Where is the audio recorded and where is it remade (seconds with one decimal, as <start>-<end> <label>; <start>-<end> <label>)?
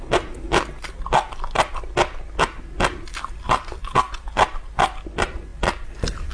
0.0-6.3 recorded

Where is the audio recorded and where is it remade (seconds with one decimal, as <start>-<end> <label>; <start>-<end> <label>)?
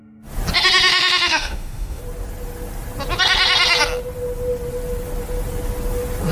0.0-0.9 recorded; 0.9-2.0 remade; 2.0-6.3 recorded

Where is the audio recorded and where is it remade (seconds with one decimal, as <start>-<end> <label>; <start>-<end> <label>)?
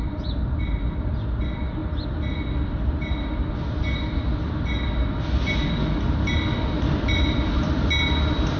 0.0-8.6 recorded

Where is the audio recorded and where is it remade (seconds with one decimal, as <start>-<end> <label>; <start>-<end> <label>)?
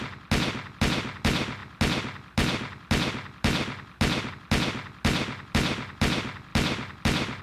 0.0-7.4 recorded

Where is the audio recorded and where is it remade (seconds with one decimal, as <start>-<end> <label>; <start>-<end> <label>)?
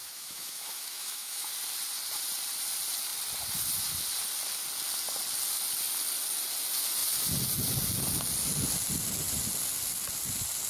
0.0-1.5 remade; 1.5-10.7 recorded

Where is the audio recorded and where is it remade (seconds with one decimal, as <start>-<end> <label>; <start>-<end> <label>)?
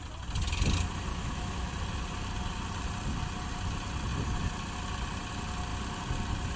0.0-1.1 recorded; 1.1-1.7 remade; 1.7-6.6 recorded